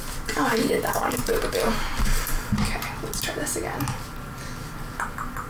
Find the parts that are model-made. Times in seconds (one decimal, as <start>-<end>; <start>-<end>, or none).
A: 0.5-1.2